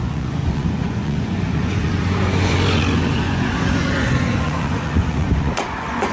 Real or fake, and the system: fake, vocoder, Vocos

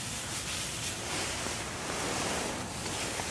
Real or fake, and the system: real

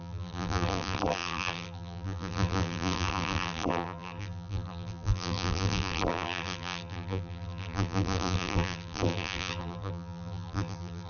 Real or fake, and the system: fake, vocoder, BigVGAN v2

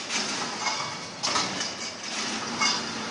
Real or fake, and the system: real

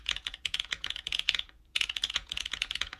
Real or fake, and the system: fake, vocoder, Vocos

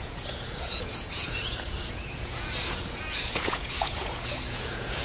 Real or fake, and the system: fake, vocoder, Vocos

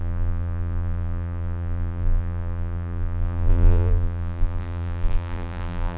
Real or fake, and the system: fake, vocoder, BigVGAN v2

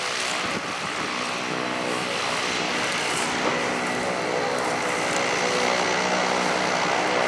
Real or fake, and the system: real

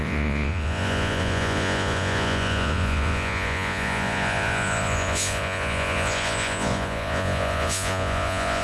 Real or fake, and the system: fake, vocoder, Vocos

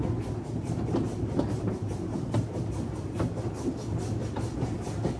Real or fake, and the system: real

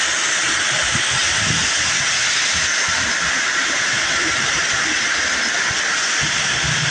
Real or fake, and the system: real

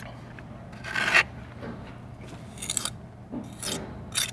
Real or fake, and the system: real